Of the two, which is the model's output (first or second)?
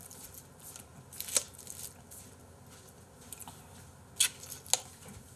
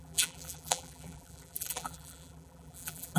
second